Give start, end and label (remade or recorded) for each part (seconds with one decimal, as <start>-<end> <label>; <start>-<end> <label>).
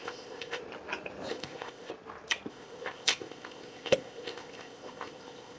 0.0-0.6 remade; 0.6-1.3 recorded; 1.3-1.9 remade; 1.9-2.5 recorded; 2.5-5.6 remade